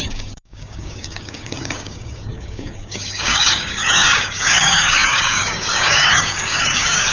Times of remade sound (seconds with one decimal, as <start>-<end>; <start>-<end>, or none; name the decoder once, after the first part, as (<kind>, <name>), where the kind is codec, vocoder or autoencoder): 0.0-7.1 (codec, DAC)